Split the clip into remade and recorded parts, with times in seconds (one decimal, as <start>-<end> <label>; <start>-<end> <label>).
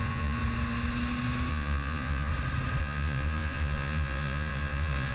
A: 0.0-0.4 remade; 0.4-1.5 recorded; 1.5-2.3 remade; 2.3-2.8 recorded; 2.8-5.1 remade